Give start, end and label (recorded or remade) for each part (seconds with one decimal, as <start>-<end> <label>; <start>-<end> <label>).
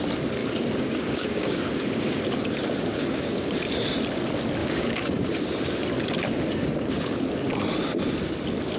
0.0-0.4 recorded; 0.4-2.2 remade; 2.2-2.9 recorded; 2.9-3.6 remade; 3.6-4.6 recorded; 4.6-5.2 remade; 5.2-8.8 recorded